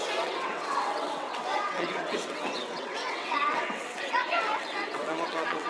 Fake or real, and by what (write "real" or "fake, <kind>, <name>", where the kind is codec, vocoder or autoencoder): fake, vocoder, WaveNeXt